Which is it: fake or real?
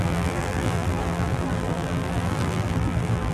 fake